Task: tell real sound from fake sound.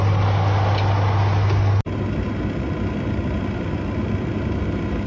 real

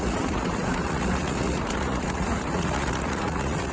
fake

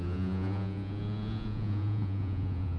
fake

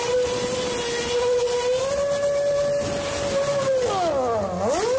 real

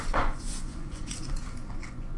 fake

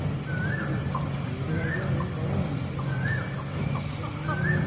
real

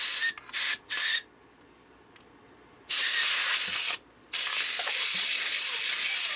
real